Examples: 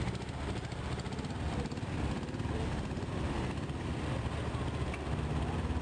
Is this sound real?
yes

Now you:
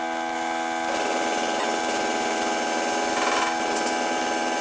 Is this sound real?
yes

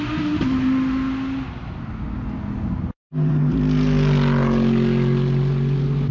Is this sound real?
yes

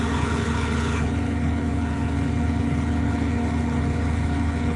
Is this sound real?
no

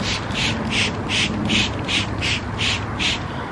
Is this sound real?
yes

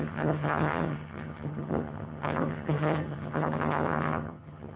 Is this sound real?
no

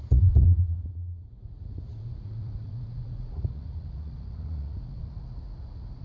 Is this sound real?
no